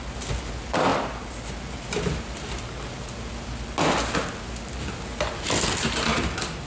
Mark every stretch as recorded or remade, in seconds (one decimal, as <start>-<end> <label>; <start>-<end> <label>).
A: 0.0-6.7 recorded